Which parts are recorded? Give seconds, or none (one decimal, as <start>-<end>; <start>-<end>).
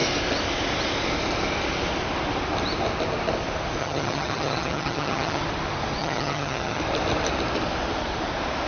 0.0-3.8; 5.4-6.0; 6.8-8.7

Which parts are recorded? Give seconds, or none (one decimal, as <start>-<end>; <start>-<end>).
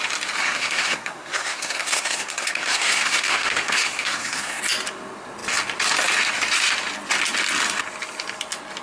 0.0-0.4; 4.6-8.8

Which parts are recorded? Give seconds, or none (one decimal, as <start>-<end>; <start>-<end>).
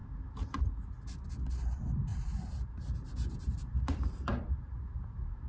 0.7-2.1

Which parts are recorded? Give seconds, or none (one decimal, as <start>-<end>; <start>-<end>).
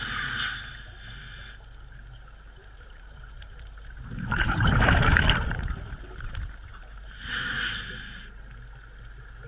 0.0-2.6; 5.2-6.7; 7.2-9.5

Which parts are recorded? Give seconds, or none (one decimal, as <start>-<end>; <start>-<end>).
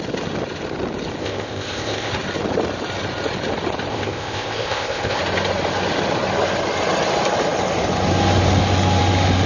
0.0-1.2; 2.1-3.9; 5.2-9.5